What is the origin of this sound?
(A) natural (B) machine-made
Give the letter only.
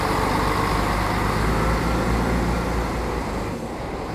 A